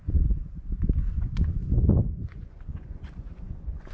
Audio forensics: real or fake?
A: fake